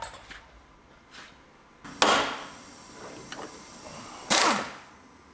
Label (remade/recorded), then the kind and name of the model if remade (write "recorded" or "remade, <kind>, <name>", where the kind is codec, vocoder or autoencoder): recorded